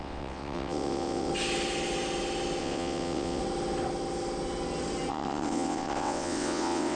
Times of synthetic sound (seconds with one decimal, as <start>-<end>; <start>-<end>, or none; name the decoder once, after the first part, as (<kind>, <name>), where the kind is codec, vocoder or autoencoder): 0.0-1.3 (vocoder, WaveNeXt); 2.6-3.4; 5.1-7.0